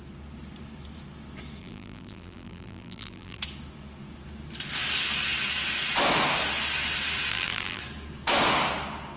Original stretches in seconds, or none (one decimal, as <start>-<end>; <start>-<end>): 0.0-1.6; 3.4-7.3; 7.8-9.2